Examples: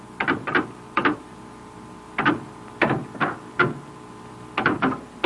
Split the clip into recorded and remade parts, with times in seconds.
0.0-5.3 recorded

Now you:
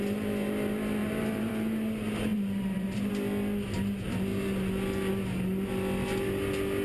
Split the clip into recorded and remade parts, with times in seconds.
0.0-1.0 recorded; 1.0-1.5 remade; 1.5-2.3 recorded; 2.3-3.1 remade; 3.1-6.8 recorded

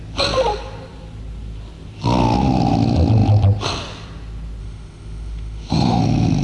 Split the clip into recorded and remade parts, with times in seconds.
0.0-4.6 recorded; 4.6-6.0 remade; 6.0-6.4 recorded

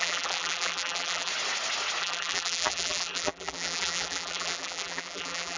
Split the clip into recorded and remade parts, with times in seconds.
0.0-1.3 remade; 1.3-2.0 recorded; 2.0-5.6 remade